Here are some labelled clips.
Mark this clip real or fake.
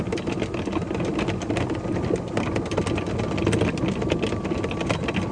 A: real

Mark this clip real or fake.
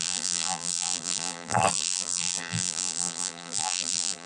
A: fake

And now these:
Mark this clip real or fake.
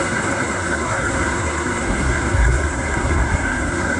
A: fake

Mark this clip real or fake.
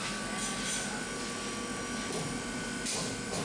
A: real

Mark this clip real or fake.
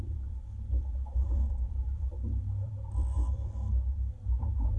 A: fake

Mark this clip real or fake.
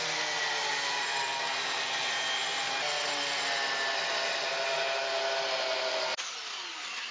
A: real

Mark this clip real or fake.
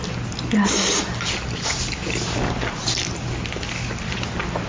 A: real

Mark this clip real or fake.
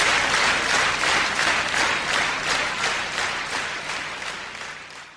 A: real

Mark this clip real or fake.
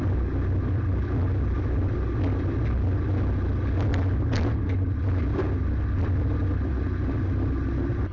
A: real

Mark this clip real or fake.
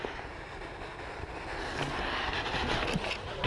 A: real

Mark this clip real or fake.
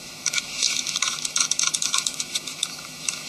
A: fake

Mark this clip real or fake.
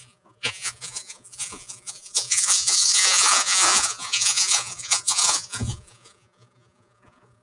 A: fake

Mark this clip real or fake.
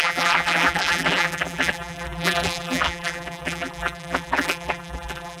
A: fake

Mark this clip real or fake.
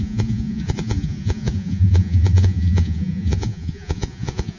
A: fake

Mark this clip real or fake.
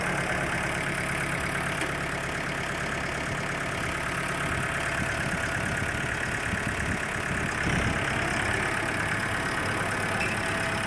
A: real